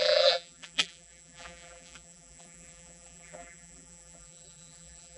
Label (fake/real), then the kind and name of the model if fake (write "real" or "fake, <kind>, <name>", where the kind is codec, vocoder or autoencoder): fake, vocoder, BigVGAN v2